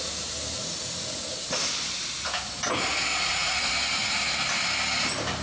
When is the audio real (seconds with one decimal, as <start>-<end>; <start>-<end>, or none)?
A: 0.0-3.1; 3.7-5.4